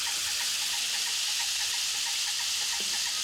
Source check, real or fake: real